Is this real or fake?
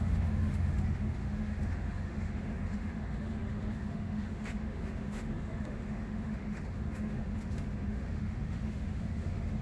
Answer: fake